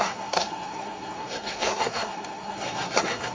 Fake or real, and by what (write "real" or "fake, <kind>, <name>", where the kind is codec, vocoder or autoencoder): fake, codec, SNAC